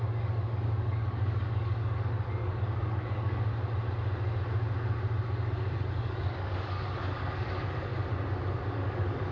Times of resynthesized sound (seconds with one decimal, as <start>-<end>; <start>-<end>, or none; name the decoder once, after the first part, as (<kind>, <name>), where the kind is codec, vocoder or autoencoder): 0.0-3.5 (codec, DAC); 5.9-7.9; 8.7-9.3